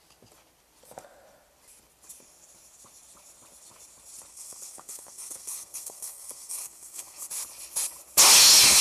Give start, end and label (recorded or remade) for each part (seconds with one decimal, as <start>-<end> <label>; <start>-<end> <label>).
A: 0.0-4.3 recorded; 4.3-7.3 remade; 7.3-8.8 recorded